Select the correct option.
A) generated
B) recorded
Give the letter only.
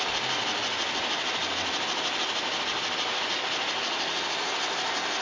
B